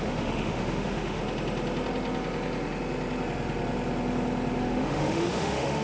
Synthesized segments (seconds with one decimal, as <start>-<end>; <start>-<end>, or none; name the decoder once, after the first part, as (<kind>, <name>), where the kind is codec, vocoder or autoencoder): 0.0-1.2 (autoencoder, DAC-VAE); 4.6-5.8

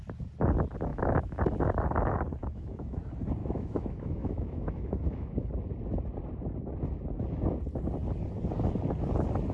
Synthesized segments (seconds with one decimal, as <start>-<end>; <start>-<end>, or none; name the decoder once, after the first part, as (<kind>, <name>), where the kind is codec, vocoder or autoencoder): 0.9-1.4 (autoencoder, DAC-VAE); 2.4-3.0; 3.4-5.5